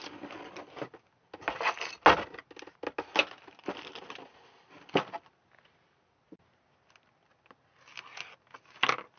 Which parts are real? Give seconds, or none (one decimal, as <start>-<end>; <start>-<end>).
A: 0.0-9.2